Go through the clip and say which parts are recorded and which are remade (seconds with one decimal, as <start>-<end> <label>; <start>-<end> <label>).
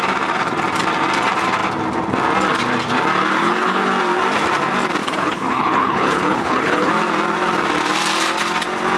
0.0-3.3 recorded; 3.3-3.9 remade; 3.9-5.0 recorded; 5.0-6.9 remade; 6.9-9.0 recorded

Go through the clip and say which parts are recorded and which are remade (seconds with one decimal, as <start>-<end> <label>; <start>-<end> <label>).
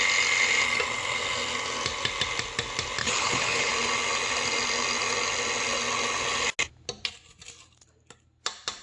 0.0-3.0 recorded; 3.0-3.7 remade; 3.7-8.8 recorded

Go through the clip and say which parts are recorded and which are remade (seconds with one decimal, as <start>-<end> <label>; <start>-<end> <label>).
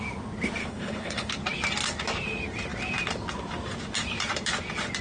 0.0-0.6 recorded; 0.6-1.3 remade; 1.3-5.0 recorded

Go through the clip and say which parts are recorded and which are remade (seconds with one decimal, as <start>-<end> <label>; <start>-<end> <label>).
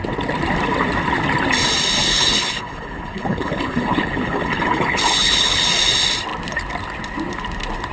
0.0-2.1 recorded; 2.1-5.6 remade; 5.6-7.9 recorded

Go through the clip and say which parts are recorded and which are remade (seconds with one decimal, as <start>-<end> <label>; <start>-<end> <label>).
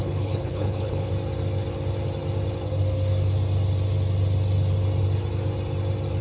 0.0-1.1 remade; 1.1-6.2 recorded